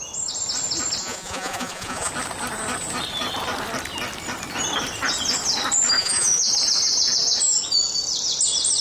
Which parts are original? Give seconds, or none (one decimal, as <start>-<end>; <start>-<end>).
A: 0.0-1.0; 2.1-6.0; 6.5-8.8